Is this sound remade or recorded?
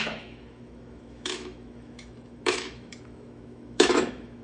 remade